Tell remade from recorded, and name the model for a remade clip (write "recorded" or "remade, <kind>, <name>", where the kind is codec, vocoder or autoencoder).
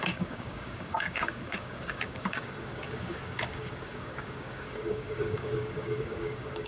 remade, codec, DAC